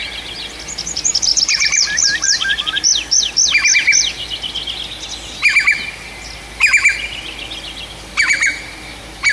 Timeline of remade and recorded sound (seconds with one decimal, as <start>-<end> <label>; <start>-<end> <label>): 0.0-1.3 recorded; 1.3-3.3 remade; 3.3-9.3 recorded